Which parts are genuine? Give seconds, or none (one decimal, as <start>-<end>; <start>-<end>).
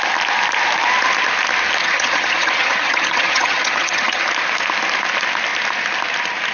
0.0-1.8; 4.2-6.5